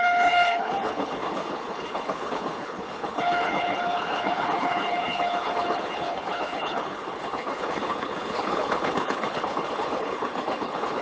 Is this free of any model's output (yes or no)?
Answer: no